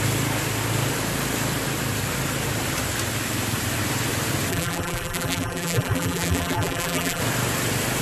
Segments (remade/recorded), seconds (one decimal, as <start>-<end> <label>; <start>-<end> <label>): 0.0-4.5 recorded; 4.5-7.2 remade; 7.2-8.0 recorded